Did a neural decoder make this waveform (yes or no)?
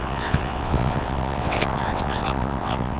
yes